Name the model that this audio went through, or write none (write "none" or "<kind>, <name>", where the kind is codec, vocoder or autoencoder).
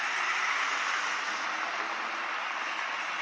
none